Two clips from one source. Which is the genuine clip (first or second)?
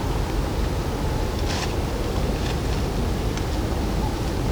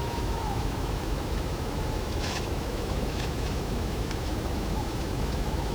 first